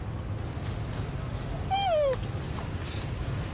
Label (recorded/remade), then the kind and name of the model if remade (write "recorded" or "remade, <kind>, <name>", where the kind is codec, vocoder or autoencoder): recorded